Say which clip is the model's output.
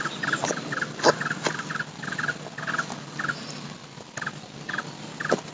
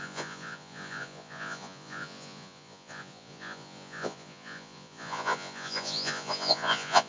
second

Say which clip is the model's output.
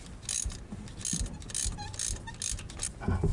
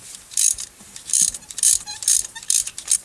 second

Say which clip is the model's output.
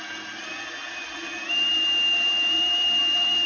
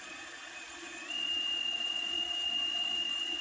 second